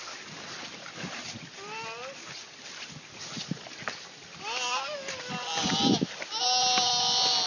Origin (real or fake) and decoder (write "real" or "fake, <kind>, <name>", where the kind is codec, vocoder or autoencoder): real